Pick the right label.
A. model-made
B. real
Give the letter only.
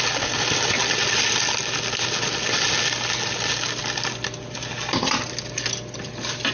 B